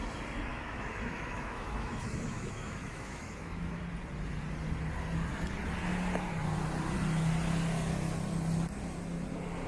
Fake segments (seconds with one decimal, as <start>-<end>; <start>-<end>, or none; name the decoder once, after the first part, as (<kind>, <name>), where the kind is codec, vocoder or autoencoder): 0.5-3.8 (autoencoder, DAC-VAE)